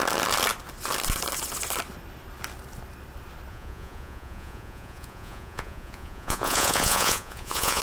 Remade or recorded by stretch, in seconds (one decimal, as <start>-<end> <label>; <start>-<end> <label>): 0.0-3.5 recorded; 3.5-7.8 remade